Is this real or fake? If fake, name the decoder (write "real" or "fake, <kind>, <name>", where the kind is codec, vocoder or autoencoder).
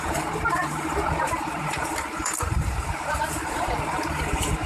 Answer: fake, vocoder, BigVGAN v2